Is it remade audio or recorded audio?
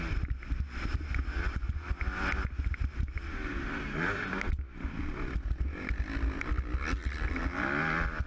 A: recorded